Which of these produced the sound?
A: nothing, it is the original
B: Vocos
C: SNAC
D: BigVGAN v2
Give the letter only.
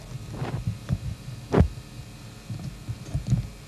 A